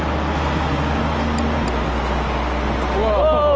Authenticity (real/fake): real